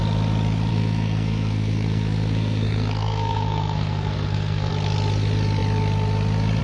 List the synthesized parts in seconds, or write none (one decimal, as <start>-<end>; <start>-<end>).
0.7-4.7